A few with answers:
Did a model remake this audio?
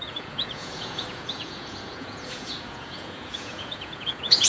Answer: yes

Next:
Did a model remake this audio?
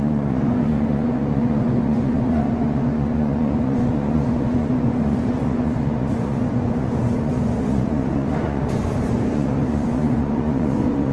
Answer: yes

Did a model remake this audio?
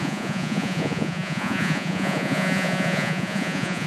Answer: yes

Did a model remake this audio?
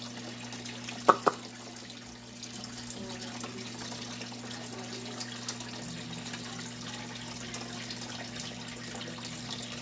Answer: no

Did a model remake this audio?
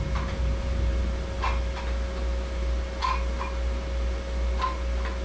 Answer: no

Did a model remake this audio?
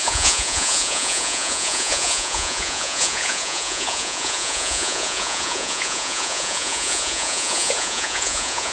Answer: yes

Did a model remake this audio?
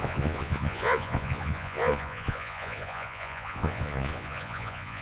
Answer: yes